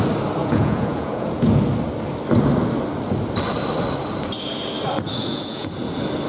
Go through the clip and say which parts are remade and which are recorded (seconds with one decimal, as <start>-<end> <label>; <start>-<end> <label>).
0.0-0.4 recorded; 0.4-1.6 remade; 1.6-5.2 recorded; 5.2-5.7 remade; 5.7-6.3 recorded

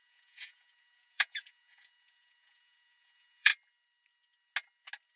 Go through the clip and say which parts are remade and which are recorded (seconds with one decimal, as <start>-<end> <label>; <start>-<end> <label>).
0.0-3.5 remade; 3.5-5.2 recorded

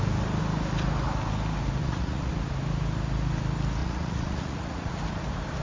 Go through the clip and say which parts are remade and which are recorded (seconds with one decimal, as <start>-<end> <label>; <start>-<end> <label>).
0.0-1.8 recorded; 1.8-2.3 remade; 2.3-3.8 recorded; 3.8-4.9 remade; 4.9-5.6 recorded

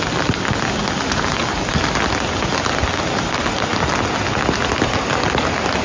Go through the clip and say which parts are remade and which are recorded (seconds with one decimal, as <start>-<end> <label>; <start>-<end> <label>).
0.0-5.8 recorded

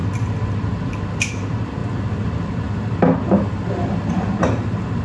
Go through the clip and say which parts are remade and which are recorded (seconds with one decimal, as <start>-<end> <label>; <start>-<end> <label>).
0.0-5.0 recorded